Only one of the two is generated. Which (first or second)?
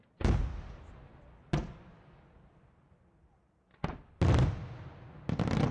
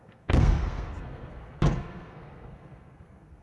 second